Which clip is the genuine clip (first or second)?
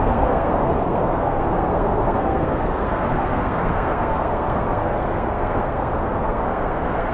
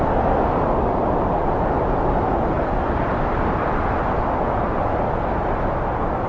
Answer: second